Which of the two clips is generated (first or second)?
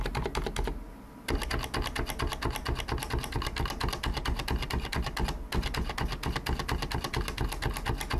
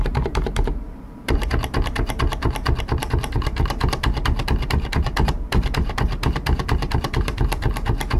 second